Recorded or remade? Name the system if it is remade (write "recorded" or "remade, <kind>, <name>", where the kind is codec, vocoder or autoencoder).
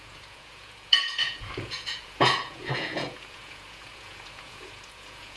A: remade, vocoder, Vocos